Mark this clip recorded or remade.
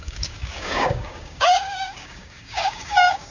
remade